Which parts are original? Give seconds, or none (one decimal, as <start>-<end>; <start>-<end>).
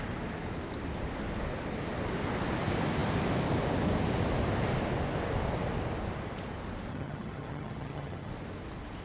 0.0-6.9; 8.3-9.0